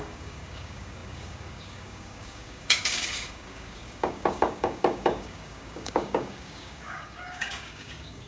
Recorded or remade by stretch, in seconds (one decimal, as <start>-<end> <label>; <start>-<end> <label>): 0.0-8.3 remade